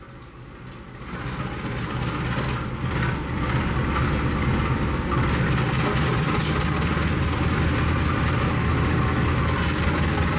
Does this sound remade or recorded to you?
recorded